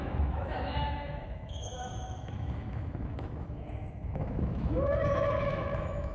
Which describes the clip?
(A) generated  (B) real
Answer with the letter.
A